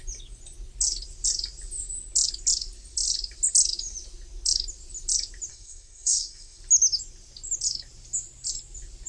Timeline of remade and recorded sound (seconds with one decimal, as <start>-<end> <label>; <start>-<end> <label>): 0.0-5.5 recorded; 5.5-6.6 remade; 6.6-9.1 recorded